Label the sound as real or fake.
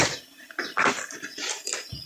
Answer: real